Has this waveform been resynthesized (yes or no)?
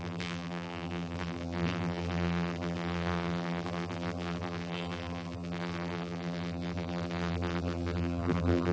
yes